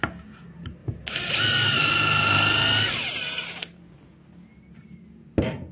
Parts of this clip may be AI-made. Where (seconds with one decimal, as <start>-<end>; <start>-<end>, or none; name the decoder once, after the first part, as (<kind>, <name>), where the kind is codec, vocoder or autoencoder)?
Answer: none